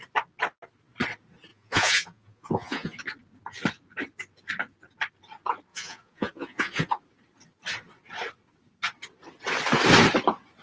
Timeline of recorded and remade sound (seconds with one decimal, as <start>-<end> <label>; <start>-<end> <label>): 0.0-1.5 recorded; 1.5-3.0 remade; 3.0-5.7 recorded; 5.7-6.9 remade; 6.9-10.6 recorded